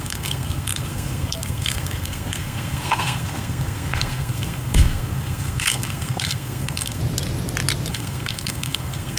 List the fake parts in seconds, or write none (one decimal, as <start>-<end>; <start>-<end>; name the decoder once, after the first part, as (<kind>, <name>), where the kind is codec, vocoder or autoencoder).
0.0-7.0 (codec, SNAC); 7.9-9.2